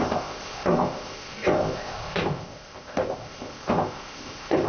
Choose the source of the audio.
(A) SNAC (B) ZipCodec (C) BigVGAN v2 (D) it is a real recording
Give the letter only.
B